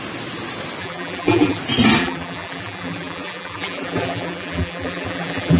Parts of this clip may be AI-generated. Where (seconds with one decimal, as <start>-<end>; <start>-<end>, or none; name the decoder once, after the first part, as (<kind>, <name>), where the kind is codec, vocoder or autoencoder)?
0.8-1.6 (vocoder, BigVGAN v2); 2.0-5.6